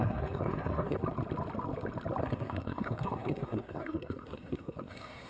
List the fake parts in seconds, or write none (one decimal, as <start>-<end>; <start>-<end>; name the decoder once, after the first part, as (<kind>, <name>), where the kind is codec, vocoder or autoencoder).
0.0-1.0 (codec, SNAC); 2.2-5.3